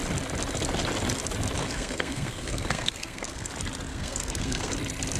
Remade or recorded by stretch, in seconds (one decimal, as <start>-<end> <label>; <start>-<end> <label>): 0.0-1.6 recorded; 1.6-3.5 remade; 3.5-3.9 recorded; 3.9-4.7 remade; 4.7-5.2 recorded